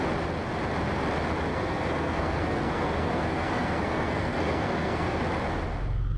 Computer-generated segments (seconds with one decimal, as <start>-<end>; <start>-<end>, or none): 1.5-5.2